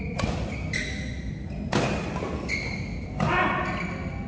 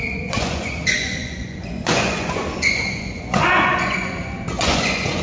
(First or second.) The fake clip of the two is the second